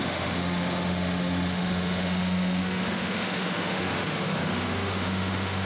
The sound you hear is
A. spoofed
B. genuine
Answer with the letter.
A